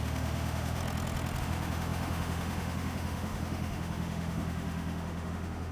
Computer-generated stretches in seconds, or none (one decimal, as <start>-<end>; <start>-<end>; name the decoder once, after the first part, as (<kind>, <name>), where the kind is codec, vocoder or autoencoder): 0.0-0.8 (autoencoder, DAC-VAE); 1.4-5.7